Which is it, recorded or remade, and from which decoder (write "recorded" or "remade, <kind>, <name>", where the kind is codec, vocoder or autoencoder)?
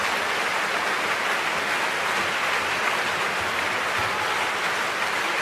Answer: recorded